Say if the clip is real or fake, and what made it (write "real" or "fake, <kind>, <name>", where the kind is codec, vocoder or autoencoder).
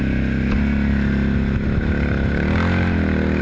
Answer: real